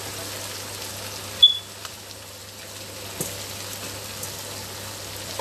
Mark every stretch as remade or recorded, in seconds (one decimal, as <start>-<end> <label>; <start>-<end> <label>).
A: 0.0-1.4 recorded; 1.4-2.4 remade; 2.4-5.4 recorded